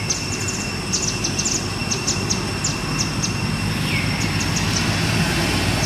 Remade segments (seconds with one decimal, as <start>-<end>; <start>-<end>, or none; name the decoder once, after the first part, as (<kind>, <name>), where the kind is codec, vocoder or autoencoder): none